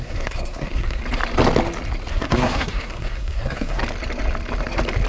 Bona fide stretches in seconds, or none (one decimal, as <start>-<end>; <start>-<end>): 1.0-2.1; 3.8-5.1